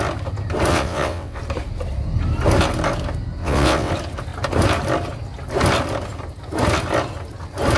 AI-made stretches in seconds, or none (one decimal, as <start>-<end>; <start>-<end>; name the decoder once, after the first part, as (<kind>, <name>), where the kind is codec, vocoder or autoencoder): 0.7-1.4 (vocoder, WaveNeXt); 3.4-3.9